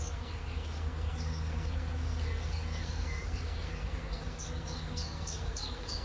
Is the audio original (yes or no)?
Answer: no